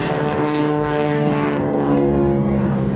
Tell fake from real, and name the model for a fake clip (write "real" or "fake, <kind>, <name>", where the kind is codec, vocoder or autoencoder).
fake, codec, DAC